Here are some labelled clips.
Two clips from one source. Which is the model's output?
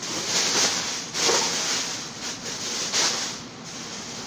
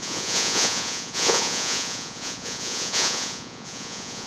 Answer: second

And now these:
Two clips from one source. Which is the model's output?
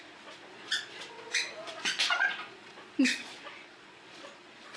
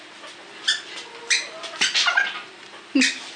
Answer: first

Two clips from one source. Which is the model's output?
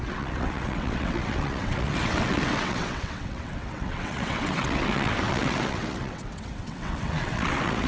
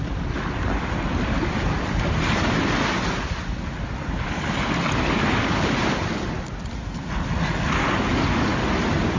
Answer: first